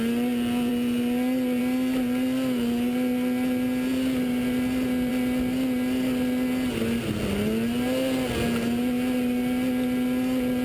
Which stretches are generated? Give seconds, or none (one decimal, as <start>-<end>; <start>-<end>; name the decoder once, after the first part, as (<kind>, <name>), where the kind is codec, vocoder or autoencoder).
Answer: none